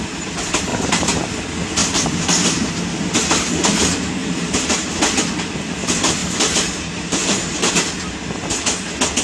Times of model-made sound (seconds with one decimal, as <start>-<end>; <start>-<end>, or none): 0.7-1.2; 1.8-2.7; 4.2-5.0; 6.2-7.7